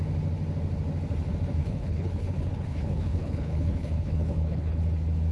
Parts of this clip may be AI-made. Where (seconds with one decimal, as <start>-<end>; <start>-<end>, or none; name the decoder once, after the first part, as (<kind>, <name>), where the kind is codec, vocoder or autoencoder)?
1.6-4.8 (codec, HILCodec)

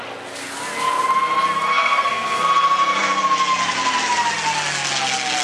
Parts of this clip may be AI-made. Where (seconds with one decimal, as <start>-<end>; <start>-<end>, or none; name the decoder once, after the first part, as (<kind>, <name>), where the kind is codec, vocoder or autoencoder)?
1.7-2.4 (codec, SNAC)

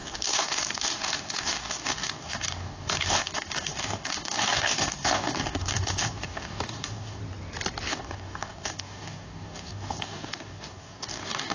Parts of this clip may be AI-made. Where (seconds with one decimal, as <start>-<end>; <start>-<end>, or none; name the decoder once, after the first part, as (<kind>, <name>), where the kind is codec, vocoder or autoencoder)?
0.0-7.2 (codec, DAC); 7.9-11.5